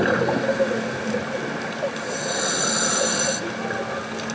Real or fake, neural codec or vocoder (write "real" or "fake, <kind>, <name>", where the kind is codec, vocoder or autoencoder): real